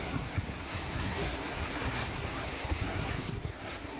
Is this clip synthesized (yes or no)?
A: yes